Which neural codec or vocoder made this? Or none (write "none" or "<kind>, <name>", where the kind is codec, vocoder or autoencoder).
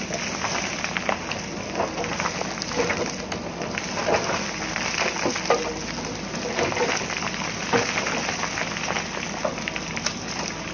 none